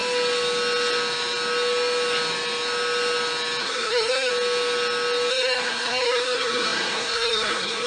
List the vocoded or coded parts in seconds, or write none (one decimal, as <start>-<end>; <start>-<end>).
3.6-4.3; 5.3-7.9